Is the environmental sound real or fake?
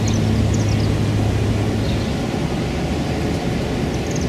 real